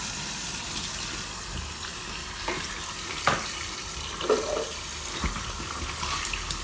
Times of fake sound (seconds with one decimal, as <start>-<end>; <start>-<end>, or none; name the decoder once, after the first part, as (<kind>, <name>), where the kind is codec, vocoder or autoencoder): none